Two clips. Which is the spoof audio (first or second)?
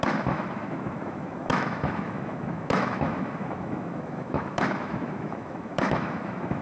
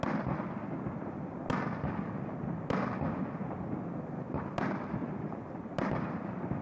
first